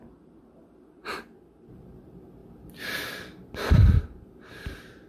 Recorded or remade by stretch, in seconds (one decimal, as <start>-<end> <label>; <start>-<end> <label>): 0.0-1.1 remade; 1.1-1.7 recorded; 1.7-2.4 remade; 2.4-3.8 recorded; 3.8-5.1 remade